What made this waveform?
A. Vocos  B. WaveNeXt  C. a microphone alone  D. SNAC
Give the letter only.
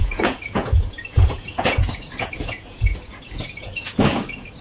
A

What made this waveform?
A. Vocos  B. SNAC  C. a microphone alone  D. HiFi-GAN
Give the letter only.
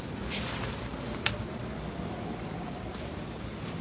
C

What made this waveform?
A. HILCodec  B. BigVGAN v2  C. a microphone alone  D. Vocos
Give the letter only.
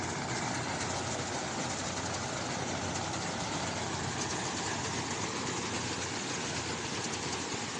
C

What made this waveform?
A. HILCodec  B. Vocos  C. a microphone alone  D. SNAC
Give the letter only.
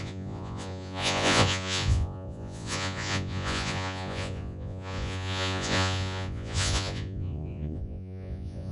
B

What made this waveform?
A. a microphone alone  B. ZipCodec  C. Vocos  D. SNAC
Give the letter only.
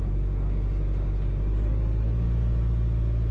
A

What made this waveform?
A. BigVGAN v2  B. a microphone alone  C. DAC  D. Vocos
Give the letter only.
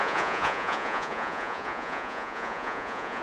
D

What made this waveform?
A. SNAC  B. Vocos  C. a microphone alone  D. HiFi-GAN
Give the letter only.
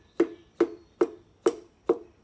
C